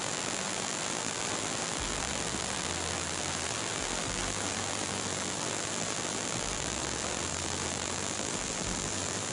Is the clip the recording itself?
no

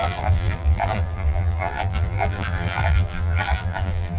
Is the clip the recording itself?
no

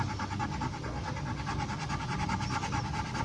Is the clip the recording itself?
yes